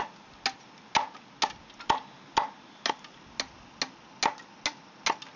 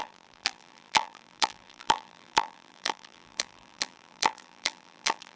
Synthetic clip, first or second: second